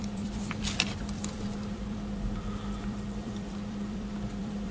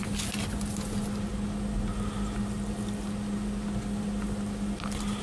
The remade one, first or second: first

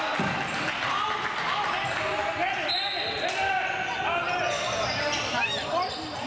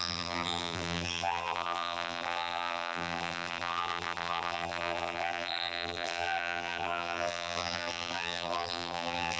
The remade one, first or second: second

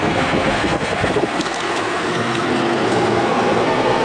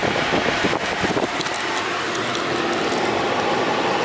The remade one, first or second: first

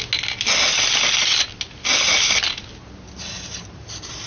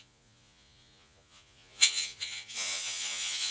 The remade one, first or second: second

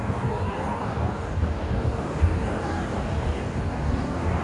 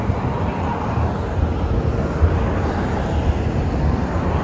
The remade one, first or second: first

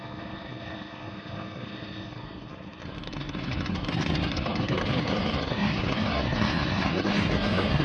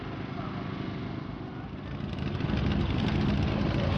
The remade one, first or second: first